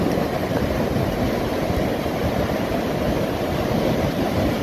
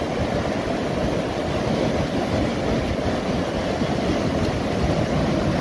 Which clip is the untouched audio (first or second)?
second